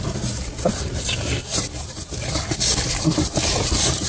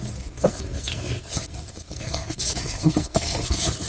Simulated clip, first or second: second